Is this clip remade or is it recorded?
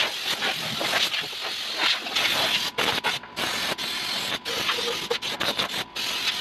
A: recorded